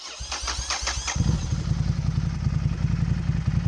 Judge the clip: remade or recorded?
recorded